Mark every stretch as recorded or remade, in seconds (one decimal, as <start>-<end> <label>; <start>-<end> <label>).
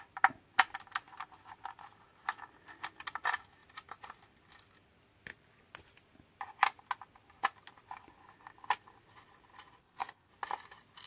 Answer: 0.0-9.8 recorded; 9.8-10.3 remade; 10.3-11.1 recorded